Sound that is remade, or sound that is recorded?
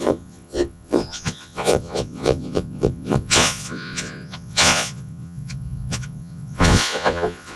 remade